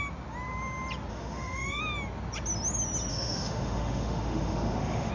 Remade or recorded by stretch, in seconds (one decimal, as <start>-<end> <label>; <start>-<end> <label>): 0.0-1.1 recorded; 1.1-1.8 remade; 1.8-3.1 recorded; 3.1-5.1 remade